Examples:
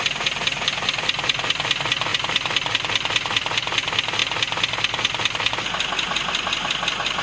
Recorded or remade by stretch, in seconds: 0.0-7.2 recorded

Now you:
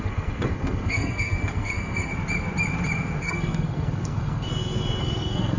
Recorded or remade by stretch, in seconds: 0.0-2.1 remade; 2.1-3.2 recorded; 3.2-4.5 remade; 4.5-5.0 recorded; 5.0-5.6 remade

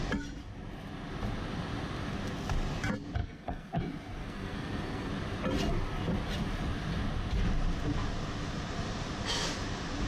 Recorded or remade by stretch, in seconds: 0.0-3.2 recorded; 3.2-3.8 remade; 3.8-4.2 recorded; 4.2-5.1 remade; 5.1-10.1 recorded

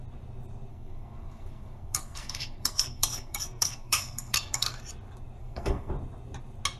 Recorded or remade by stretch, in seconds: 0.0-0.7 recorded; 0.7-4.8 remade; 4.8-5.4 recorded; 5.4-5.9 remade; 5.9-6.8 recorded

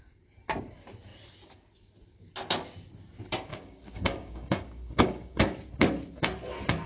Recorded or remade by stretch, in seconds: 0.0-3.5 recorded; 3.5-5.4 remade; 5.4-6.9 recorded

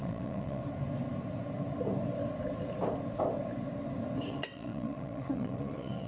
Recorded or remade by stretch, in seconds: 0.0-0.6 remade; 0.6-4.3 recorded; 4.3-6.1 remade

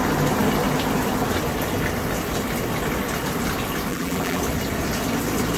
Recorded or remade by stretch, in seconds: 0.0-3.9 recorded; 3.9-4.4 remade; 4.4-5.6 recorded